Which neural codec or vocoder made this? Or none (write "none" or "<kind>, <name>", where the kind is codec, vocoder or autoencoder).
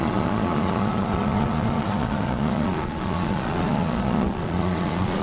vocoder, Vocos